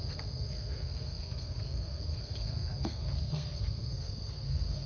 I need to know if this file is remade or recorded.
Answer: remade